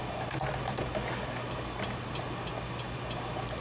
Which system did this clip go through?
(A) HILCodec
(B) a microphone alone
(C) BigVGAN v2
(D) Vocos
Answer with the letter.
B